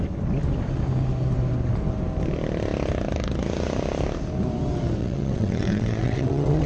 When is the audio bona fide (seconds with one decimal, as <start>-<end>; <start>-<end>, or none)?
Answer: 0.0-5.0